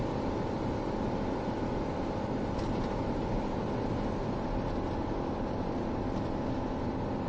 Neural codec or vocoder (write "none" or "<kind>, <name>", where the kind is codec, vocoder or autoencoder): none